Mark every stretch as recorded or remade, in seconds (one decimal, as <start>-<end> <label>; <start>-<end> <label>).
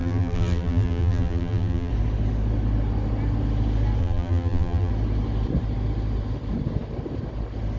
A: 0.0-1.9 remade; 1.9-4.0 recorded; 4.0-4.9 remade; 4.9-7.8 recorded